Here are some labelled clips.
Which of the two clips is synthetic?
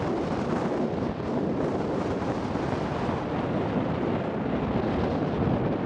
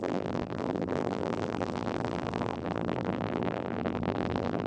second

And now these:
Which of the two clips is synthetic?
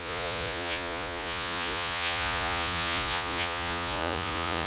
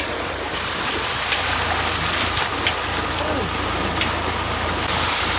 first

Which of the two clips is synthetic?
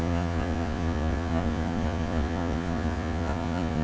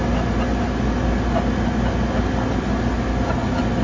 first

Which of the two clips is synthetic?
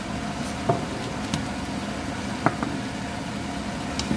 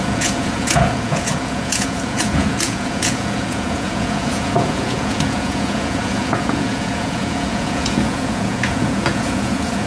second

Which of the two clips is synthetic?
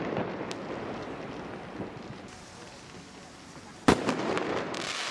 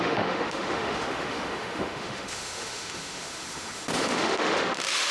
second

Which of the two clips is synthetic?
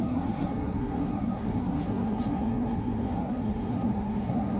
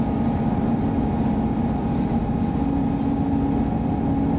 first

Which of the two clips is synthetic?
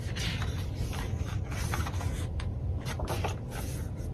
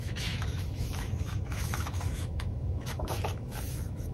second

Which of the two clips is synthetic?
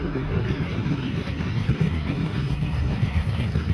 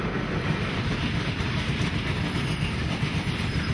first